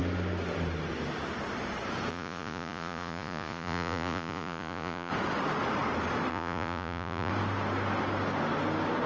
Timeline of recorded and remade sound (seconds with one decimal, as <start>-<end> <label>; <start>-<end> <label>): 0.0-2.1 recorded; 2.1-5.1 remade; 5.1-6.3 recorded; 6.3-7.3 remade; 7.3-9.1 recorded